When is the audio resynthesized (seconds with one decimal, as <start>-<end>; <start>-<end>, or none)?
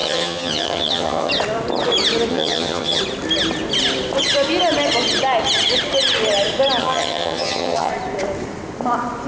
0.0-1.3; 2.3-3.0; 6.8-7.9